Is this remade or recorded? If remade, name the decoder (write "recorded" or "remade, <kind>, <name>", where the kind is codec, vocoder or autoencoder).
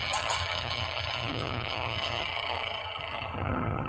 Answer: remade, vocoder, HiFi-GAN